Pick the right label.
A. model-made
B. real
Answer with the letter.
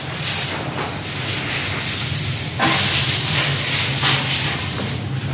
B